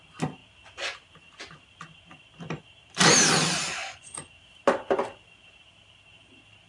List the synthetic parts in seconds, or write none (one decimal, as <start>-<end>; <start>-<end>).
3.8-4.3

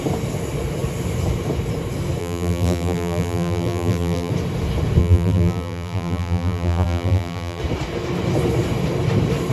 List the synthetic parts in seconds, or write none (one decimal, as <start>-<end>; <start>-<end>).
2.2-4.3; 5.0-7.6

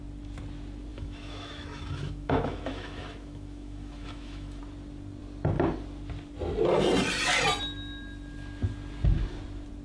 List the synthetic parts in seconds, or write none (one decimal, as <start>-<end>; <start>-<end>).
0.9-4.6

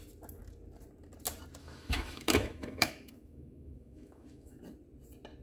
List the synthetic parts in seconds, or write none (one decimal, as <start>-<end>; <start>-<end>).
1.6-4.6

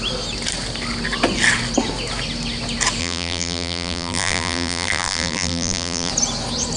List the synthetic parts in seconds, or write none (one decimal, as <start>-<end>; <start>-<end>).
3.0-6.1

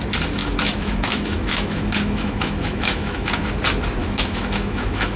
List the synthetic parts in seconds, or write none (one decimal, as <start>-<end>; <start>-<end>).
0.4-3.5; 4.0-5.2

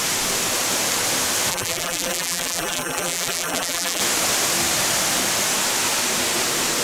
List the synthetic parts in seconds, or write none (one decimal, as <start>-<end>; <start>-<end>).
1.5-4.0